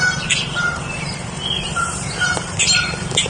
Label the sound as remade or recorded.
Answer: remade